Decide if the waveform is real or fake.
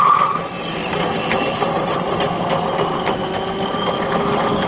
real